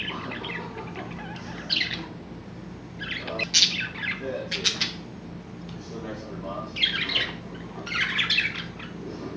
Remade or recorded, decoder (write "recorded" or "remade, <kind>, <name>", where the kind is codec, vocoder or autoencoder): recorded